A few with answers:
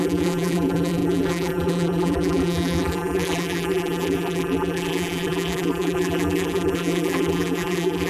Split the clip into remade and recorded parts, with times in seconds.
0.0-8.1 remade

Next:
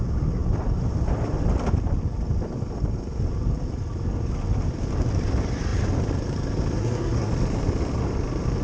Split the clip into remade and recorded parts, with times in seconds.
0.0-6.8 recorded; 6.8-7.3 remade; 7.3-8.6 recorded